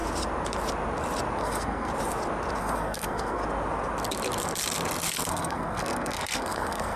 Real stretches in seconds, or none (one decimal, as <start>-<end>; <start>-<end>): 0.0-1.4; 1.9-2.6; 3.4-5.3